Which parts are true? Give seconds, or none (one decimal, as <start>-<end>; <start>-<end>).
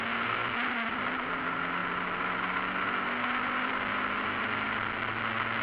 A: 0.0-5.6